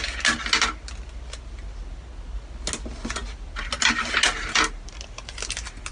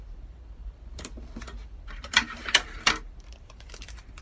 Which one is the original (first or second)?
first